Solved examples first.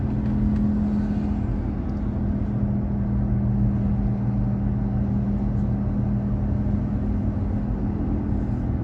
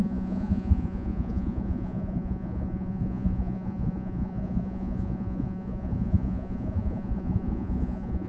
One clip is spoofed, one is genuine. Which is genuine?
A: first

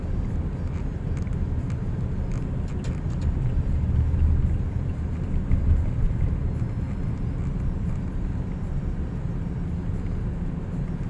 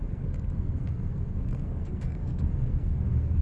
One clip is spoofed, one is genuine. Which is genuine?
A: first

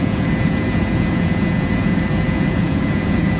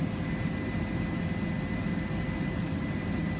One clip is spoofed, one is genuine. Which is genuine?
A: second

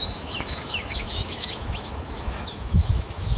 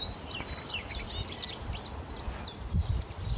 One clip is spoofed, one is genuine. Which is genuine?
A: second